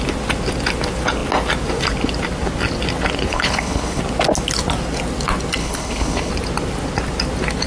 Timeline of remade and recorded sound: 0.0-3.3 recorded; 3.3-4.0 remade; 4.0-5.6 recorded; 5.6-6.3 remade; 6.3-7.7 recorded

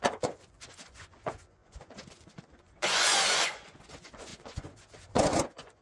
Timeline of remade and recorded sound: 0.0-5.8 remade

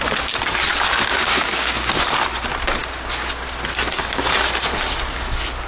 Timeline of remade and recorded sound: 0.0-1.1 recorded; 1.1-1.9 remade; 1.9-5.7 recorded